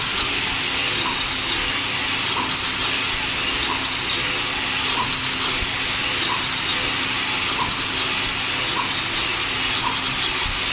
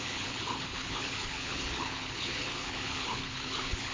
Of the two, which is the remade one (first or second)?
second